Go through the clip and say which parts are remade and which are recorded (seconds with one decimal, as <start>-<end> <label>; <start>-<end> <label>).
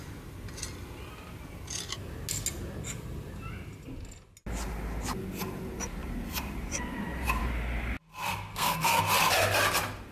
0.0-8.5 recorded; 8.5-9.0 remade; 9.0-10.1 recorded